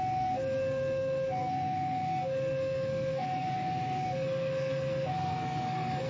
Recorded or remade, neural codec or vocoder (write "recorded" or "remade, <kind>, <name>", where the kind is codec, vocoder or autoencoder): remade, codec, SNAC